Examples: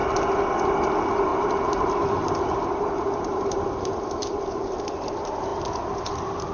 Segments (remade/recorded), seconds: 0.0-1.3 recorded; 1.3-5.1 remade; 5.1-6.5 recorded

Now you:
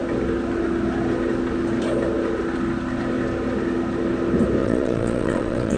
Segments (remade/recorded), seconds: 0.0-4.6 recorded; 4.6-5.8 remade

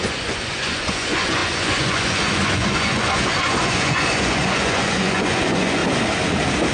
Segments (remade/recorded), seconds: 0.0-5.8 remade; 5.8-6.7 recorded

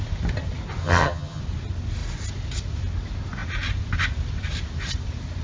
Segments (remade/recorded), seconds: 0.0-0.8 recorded; 0.8-1.4 remade; 1.4-5.4 recorded